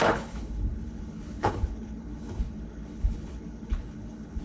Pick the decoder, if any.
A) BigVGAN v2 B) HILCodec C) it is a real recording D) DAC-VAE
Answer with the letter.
B